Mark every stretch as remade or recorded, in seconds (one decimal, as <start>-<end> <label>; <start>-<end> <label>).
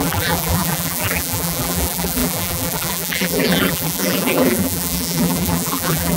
0.0-6.2 remade